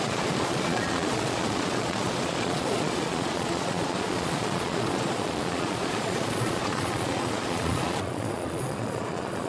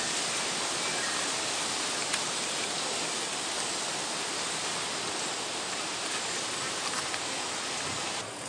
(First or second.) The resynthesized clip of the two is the first